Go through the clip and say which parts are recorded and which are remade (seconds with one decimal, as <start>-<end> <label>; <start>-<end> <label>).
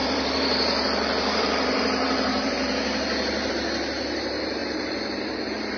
0.0-5.8 remade